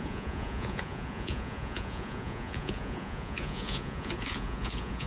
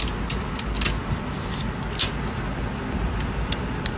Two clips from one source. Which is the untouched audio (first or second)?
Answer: second